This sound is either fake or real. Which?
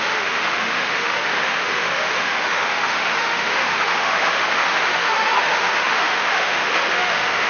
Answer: fake